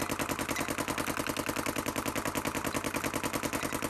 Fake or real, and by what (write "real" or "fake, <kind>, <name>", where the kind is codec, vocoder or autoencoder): real